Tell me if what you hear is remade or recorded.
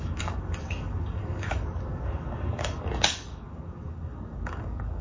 remade